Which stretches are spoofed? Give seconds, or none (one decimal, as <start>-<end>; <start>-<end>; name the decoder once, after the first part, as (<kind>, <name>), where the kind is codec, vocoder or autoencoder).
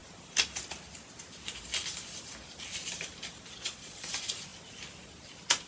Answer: 3.5-4.1 (vocoder, Vocos)